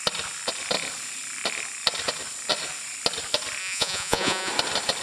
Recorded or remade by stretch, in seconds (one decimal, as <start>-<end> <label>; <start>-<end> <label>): 0.0-3.6 recorded; 3.6-4.5 remade; 4.5-5.0 recorded